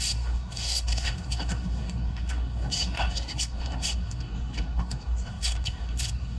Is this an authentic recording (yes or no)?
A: no